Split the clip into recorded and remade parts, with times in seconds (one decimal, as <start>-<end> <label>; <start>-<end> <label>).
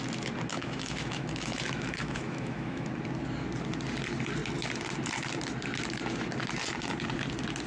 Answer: 0.0-0.5 recorded; 0.5-2.9 remade; 2.9-7.7 recorded